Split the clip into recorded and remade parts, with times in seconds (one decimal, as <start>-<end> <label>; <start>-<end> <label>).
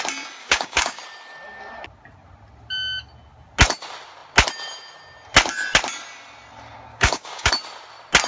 0.0-0.4 recorded; 0.4-1.0 remade; 1.0-6.9 recorded; 6.9-7.5 remade; 7.5-8.3 recorded